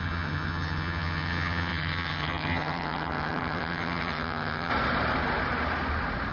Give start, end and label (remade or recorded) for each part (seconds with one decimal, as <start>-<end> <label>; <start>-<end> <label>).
0.0-4.7 remade; 4.7-6.3 recorded

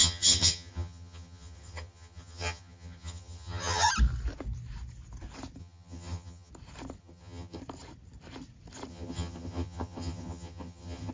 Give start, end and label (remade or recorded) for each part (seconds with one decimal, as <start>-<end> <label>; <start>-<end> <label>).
0.0-3.9 remade; 3.9-5.6 recorded; 5.6-6.5 remade; 6.5-7.0 recorded; 7.0-7.6 remade; 7.6-8.9 recorded; 8.9-11.1 remade

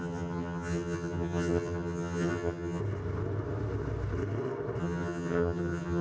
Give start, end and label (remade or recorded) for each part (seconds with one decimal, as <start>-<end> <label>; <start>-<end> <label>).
0.0-2.8 remade; 2.8-4.8 recorded; 4.8-6.0 remade

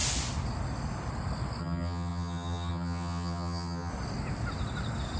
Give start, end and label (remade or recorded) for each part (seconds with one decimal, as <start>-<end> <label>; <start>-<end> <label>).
0.0-1.6 recorded; 1.6-3.9 remade; 3.9-5.2 recorded

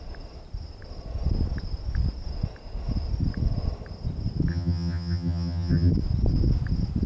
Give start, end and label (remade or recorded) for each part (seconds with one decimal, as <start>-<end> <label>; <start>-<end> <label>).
0.0-4.5 recorded; 4.5-5.9 remade; 5.9-7.1 recorded

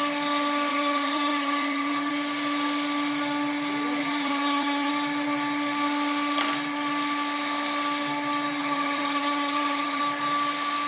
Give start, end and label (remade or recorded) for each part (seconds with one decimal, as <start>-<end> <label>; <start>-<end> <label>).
0.0-0.7 recorded; 0.7-2.1 remade; 2.1-4.0 recorded; 4.0-4.9 remade; 4.9-8.6 recorded; 8.6-10.0 remade; 10.0-10.9 recorded

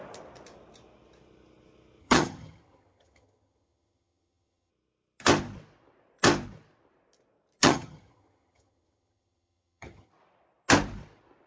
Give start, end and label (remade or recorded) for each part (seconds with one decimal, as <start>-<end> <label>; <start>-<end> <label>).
0.0-2.0 recorded; 2.0-4.7 remade; 4.7-7.6 recorded; 7.6-10.1 remade; 10.1-11.5 recorded

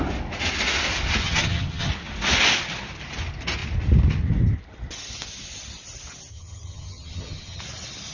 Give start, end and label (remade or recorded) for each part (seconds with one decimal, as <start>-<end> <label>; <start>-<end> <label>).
0.0-1.2 recorded; 1.2-1.9 remade; 1.9-6.3 recorded; 6.3-7.6 remade; 7.6-8.1 recorded